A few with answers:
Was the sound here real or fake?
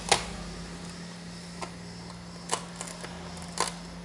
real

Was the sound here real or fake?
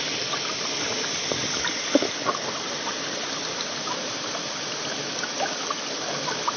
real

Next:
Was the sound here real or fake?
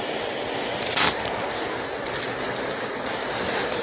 real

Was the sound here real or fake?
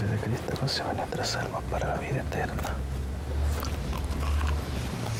real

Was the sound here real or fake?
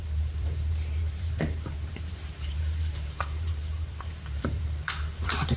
fake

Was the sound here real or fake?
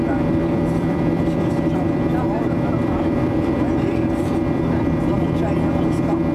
fake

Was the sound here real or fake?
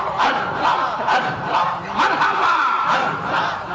fake